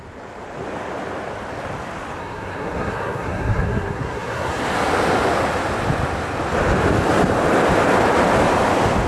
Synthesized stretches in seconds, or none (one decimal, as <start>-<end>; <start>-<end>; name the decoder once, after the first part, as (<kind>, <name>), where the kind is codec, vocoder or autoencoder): 2.2-4.6 (codec, SNAC)